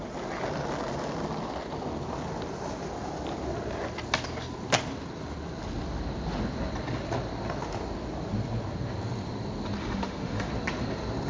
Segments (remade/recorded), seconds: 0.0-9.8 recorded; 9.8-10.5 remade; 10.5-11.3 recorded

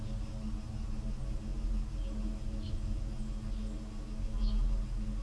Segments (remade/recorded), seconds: 0.0-5.2 recorded

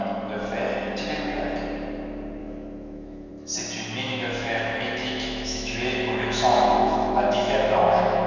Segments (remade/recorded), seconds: 0.0-2.4 recorded; 2.4-3.3 remade; 3.3-4.1 recorded; 4.1-8.3 remade